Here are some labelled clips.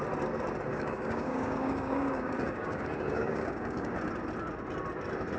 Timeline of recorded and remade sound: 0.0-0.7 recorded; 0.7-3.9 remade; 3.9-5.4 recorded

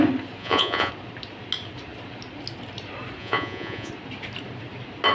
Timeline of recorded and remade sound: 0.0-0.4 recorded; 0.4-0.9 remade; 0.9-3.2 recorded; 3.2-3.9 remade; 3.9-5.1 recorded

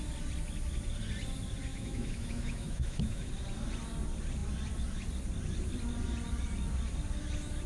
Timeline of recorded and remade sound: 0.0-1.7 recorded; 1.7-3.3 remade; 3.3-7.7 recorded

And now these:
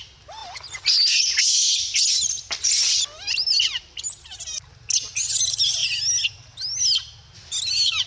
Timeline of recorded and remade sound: 0.0-8.1 recorded